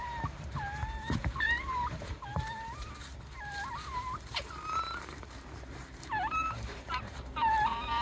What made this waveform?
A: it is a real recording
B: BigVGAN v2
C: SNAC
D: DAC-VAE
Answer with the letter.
B